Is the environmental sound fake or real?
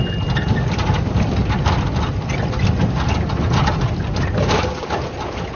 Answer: real